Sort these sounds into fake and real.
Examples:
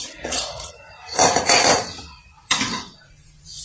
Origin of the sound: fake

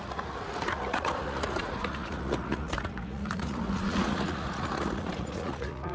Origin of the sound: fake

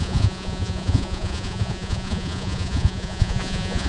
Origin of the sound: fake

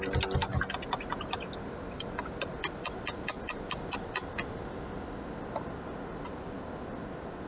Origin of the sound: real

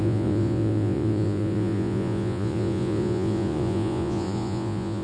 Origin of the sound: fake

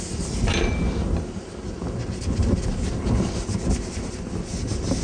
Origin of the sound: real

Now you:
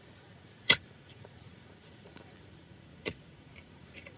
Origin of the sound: fake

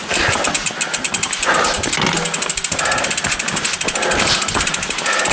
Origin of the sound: real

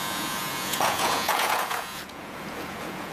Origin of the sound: fake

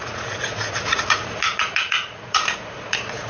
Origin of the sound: fake